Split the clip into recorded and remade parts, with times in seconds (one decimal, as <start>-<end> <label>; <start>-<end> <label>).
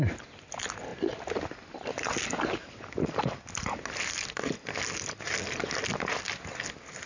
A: 0.0-7.1 recorded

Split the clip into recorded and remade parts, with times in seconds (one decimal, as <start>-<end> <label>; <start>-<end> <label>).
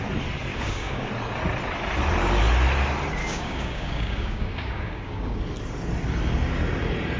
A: 0.0-0.5 recorded; 0.5-1.1 remade; 1.1-3.2 recorded; 3.2-5.4 remade; 5.4-7.2 recorded